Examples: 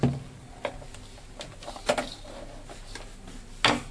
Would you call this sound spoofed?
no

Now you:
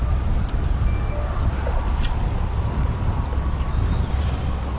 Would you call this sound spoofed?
no